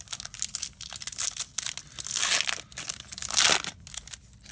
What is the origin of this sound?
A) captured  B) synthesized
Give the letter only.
A